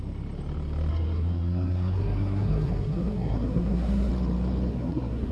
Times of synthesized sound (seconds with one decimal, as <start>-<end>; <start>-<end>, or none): 0.9-4.1; 4.7-5.3